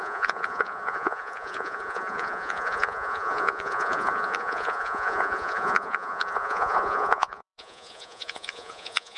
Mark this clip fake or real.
fake